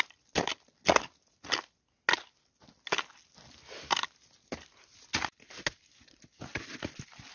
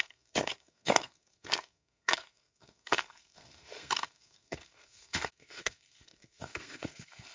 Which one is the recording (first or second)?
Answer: first